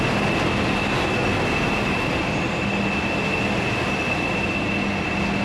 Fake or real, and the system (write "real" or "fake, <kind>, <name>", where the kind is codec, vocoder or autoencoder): real